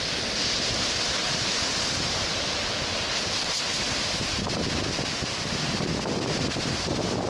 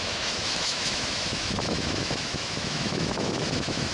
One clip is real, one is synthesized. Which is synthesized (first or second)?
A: second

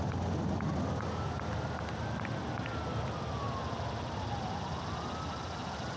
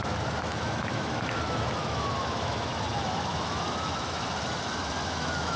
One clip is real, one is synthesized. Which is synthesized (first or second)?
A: second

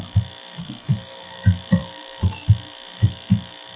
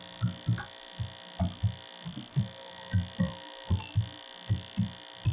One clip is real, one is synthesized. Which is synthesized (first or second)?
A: first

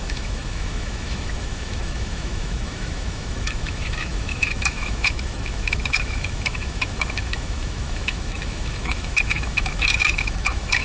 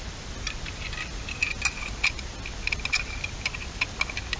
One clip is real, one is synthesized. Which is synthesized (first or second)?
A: first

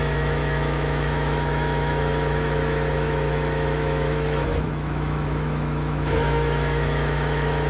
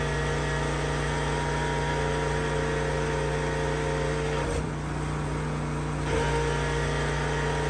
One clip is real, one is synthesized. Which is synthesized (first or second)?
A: first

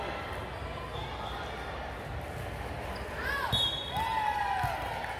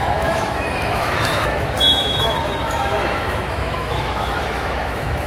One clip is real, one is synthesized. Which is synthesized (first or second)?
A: second